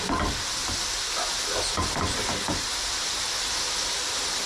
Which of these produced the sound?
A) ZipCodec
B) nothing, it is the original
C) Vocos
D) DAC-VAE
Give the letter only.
B